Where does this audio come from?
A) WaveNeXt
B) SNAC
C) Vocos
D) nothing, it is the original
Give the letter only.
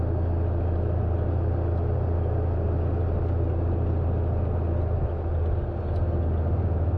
D